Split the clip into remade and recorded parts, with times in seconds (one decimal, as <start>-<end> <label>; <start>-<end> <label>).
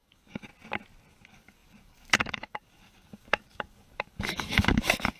0.0-0.5 remade; 0.5-1.1 recorded; 1.1-5.2 remade